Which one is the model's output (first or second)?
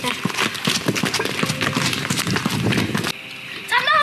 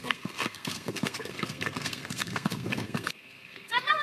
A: second